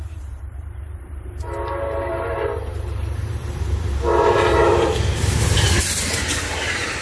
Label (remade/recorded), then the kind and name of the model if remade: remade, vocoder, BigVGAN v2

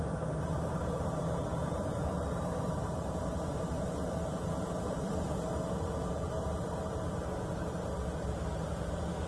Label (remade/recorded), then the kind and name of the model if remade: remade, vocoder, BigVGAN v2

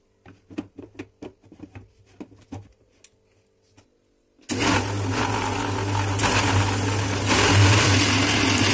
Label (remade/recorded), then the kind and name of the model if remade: recorded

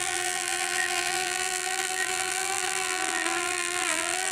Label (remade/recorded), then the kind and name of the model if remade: remade, vocoder, BigVGAN v2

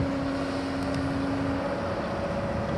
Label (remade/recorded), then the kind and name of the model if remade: recorded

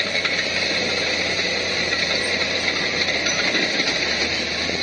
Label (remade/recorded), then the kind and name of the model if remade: remade, vocoder, BigVGAN v2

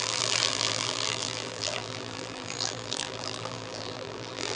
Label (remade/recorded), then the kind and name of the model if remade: remade, vocoder, BigVGAN v2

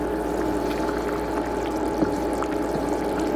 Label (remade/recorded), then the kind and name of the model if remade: recorded